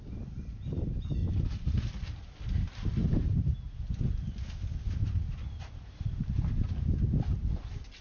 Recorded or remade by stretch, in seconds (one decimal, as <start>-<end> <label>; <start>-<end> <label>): 0.0-1.2 recorded; 1.2-1.8 remade; 1.8-3.0 recorded; 3.0-3.8 remade; 3.8-5.0 recorded; 5.0-6.3 remade; 6.3-8.0 recorded